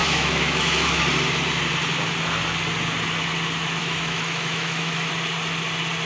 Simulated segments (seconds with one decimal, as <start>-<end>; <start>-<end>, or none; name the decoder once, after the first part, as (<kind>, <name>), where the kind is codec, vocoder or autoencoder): 0.0-1.0 (autoencoder, DAC-VAE); 3.8-5.1